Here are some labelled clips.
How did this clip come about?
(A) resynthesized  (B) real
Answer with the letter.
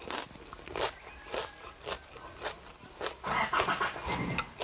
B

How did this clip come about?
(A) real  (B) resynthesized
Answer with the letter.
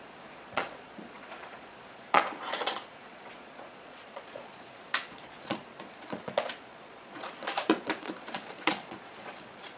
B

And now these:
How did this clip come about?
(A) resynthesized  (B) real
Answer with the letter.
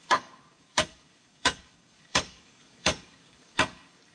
A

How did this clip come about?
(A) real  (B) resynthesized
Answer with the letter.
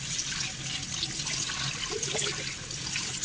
A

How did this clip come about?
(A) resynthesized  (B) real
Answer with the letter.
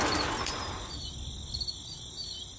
B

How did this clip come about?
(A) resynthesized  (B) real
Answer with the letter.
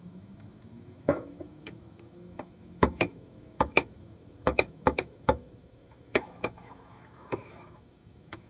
A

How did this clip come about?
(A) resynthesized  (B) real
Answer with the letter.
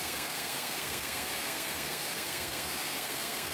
A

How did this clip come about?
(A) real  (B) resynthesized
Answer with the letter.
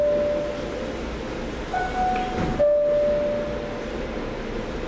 A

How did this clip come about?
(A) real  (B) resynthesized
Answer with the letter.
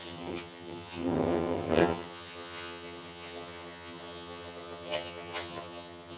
B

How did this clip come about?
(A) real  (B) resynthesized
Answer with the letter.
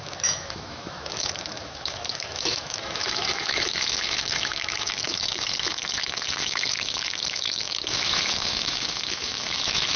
B